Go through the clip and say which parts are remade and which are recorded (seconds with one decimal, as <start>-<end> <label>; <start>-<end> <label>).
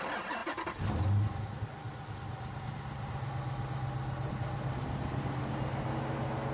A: 0.0-6.5 recorded